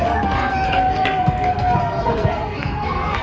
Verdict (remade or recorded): remade